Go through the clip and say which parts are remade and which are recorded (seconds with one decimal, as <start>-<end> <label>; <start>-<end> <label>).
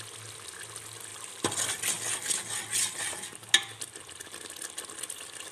0.0-5.5 recorded